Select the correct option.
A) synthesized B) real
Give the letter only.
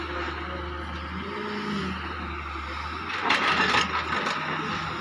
B